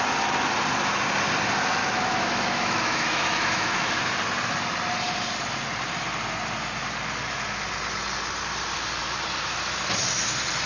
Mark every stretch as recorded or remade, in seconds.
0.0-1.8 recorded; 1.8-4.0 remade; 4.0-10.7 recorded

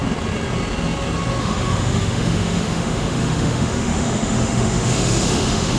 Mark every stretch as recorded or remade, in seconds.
0.0-1.4 recorded; 1.4-5.8 remade

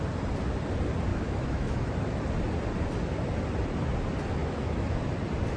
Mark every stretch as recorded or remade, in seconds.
0.0-1.1 recorded; 1.1-2.2 remade; 2.2-4.4 recorded; 4.4-5.1 remade; 5.1-5.6 recorded

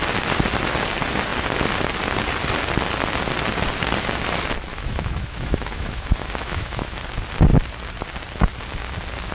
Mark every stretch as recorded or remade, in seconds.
0.0-4.7 recorded; 4.7-7.0 remade; 7.0-9.3 recorded

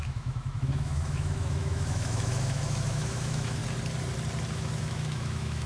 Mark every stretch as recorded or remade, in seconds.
0.0-3.6 remade; 3.6-4.5 recorded; 4.5-5.7 remade

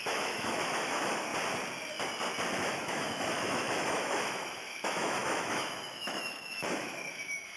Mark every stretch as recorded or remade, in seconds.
0.0-1.3 remade; 1.3-2.7 recorded; 2.7-7.6 remade